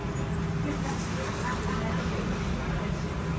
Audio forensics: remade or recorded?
recorded